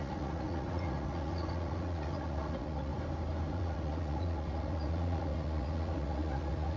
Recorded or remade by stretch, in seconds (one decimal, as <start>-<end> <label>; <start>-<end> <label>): 0.0-2.9 remade; 2.9-3.5 recorded; 3.5-6.8 remade